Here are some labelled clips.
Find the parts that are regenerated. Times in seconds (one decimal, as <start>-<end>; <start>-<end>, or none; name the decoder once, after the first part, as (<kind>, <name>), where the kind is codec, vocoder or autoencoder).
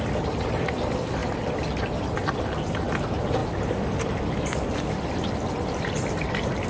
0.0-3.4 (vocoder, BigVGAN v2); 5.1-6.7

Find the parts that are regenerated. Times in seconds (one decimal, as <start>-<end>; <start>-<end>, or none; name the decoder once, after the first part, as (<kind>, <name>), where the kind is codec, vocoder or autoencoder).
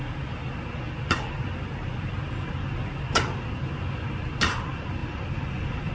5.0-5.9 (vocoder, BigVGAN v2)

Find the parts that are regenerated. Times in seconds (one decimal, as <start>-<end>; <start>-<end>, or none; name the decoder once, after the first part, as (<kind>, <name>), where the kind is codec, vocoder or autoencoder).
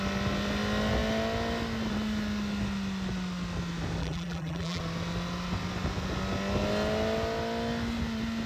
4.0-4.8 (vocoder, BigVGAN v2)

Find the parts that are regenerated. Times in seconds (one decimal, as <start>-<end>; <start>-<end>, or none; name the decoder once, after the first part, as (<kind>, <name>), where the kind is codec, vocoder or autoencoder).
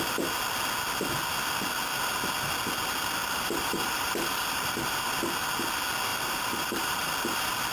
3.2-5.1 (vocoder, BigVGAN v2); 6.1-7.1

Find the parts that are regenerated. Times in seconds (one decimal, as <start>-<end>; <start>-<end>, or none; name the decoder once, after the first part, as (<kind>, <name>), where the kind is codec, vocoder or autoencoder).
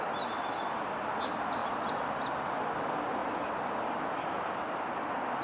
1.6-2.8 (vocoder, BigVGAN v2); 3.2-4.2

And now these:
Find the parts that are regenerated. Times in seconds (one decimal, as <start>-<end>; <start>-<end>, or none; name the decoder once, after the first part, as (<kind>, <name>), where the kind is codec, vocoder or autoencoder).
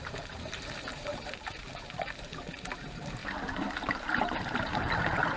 0.0-5.4 (vocoder, BigVGAN v2)